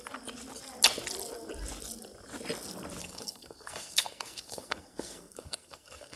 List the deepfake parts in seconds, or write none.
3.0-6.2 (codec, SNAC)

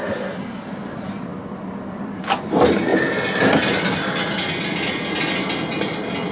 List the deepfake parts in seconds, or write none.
none